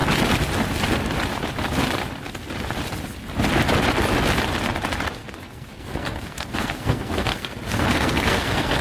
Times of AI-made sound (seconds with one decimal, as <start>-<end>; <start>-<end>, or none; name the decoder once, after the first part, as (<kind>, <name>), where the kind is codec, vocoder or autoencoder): 5.2-8.8 (codec, SNAC)